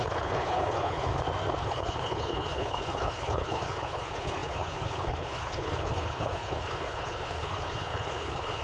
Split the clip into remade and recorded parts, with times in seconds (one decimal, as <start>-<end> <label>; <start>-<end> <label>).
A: 0.0-1.1 remade; 1.1-1.6 recorded; 1.6-8.6 remade